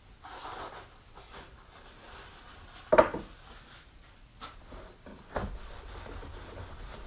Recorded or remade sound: recorded